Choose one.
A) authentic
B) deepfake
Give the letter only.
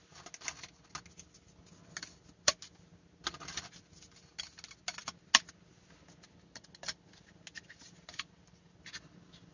A